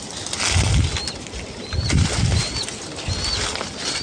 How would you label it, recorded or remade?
recorded